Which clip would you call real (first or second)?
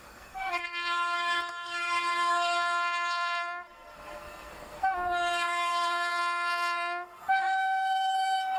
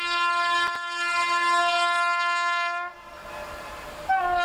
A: second